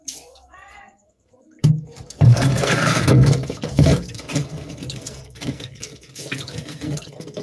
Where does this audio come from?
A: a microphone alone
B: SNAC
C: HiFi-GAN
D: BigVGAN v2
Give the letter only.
B